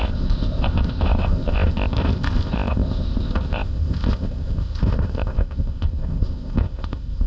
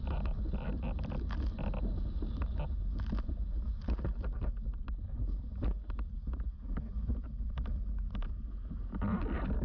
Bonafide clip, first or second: second